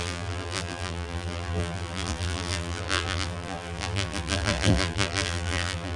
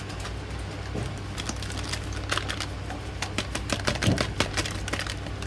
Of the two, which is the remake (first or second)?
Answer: first